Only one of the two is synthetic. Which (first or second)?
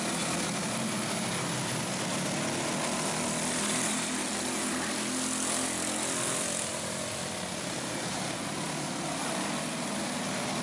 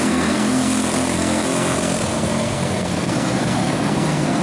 second